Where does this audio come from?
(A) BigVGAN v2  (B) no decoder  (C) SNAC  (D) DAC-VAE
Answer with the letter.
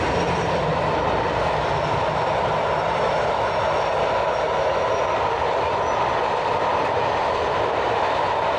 B